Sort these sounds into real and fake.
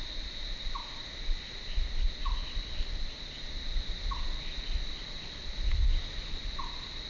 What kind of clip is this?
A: real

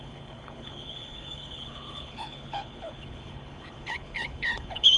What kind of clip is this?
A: fake